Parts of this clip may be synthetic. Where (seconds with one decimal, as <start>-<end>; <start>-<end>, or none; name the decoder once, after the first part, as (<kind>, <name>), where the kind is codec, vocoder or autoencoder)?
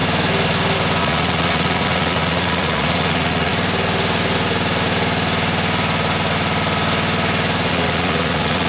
1.0-3.5 (vocoder, Vocos); 7.7-8.7